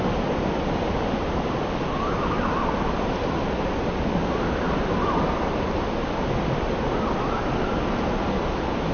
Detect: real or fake real